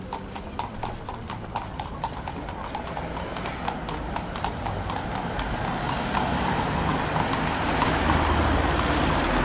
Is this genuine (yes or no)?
yes